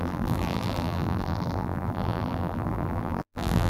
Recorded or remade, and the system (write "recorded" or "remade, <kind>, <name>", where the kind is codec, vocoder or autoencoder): remade, vocoder, BigVGAN v2